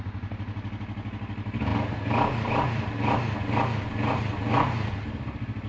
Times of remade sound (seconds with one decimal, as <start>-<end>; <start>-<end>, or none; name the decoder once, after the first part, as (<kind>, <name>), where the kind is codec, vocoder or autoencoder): none